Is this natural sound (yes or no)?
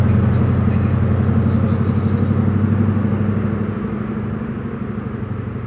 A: yes